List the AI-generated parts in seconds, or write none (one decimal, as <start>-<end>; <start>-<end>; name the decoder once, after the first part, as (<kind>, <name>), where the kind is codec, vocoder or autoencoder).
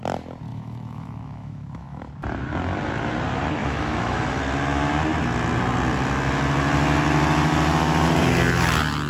0.5-2.0 (autoencoder, DAC-VAE); 3.6-4.4